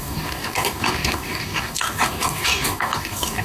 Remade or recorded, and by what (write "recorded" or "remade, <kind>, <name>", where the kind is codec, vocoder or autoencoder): remade, codec, DAC